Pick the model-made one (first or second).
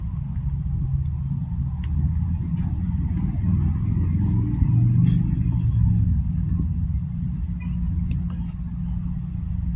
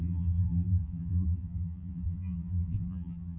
second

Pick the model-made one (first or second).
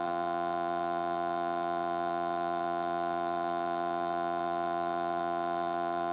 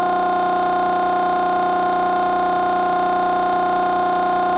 first